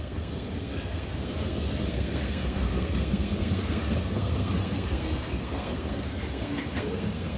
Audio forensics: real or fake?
fake